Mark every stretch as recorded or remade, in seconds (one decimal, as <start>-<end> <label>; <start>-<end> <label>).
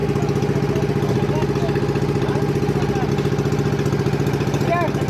0.0-5.1 recorded